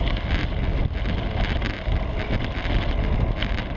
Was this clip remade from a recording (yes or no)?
no